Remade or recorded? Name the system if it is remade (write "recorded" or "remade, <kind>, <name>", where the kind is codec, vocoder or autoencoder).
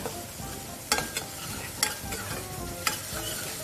recorded